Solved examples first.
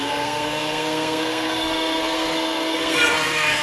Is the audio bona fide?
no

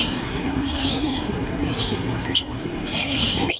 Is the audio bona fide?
no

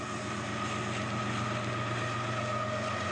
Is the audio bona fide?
yes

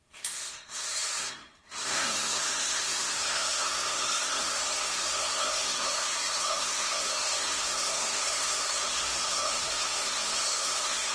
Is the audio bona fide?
no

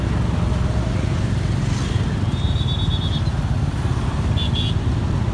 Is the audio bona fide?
yes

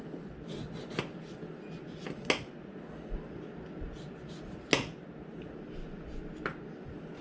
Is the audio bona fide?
yes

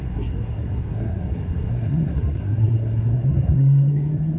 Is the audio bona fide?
no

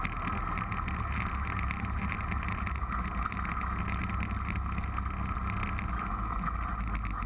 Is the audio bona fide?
yes